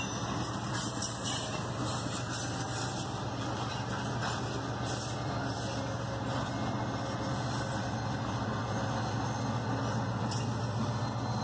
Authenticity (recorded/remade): recorded